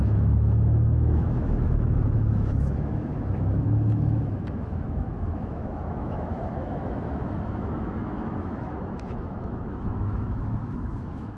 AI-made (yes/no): yes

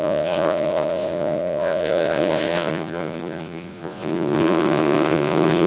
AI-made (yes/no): yes